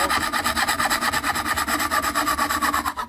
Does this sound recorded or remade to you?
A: recorded